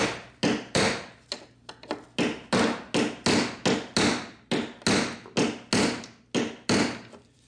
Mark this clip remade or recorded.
recorded